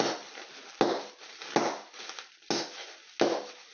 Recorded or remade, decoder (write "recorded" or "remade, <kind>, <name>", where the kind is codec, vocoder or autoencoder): recorded